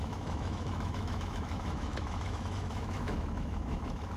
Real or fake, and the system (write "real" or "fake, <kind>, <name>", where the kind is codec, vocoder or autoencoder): fake, autoencoder, DAC-VAE